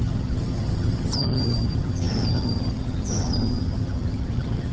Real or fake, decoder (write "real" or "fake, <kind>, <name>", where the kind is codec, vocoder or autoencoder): fake, vocoder, HiFi-GAN